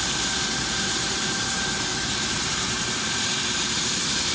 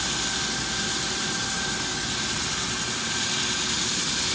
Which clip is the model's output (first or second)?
first